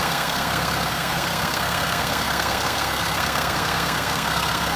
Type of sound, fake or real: fake